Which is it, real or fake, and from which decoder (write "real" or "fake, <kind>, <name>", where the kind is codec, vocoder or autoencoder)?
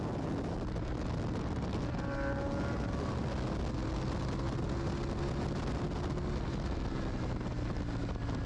real